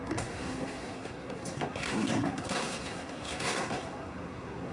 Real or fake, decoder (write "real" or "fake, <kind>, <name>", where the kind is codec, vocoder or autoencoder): fake, codec, SNAC